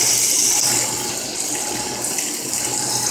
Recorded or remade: recorded